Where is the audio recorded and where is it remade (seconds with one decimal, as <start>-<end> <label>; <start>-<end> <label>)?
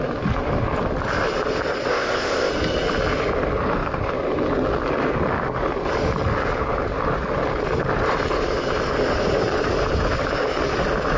0.0-1.9 recorded; 1.9-2.5 remade; 2.5-11.2 recorded